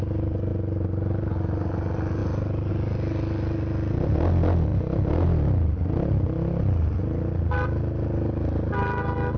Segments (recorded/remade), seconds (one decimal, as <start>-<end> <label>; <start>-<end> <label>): 0.0-9.4 recorded